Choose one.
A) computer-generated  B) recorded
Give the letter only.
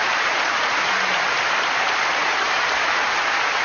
A